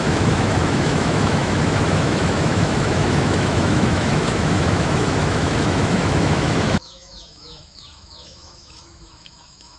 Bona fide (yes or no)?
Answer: no